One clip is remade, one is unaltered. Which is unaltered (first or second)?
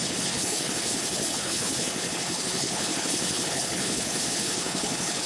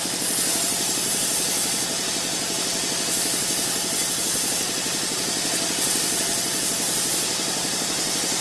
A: second